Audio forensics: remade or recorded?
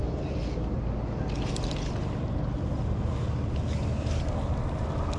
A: recorded